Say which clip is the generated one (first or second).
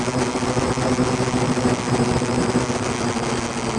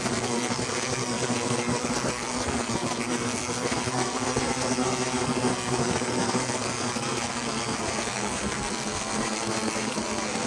second